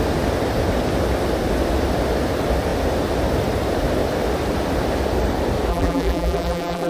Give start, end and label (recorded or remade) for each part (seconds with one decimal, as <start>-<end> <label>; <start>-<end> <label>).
0.0-5.7 recorded; 5.7-6.9 remade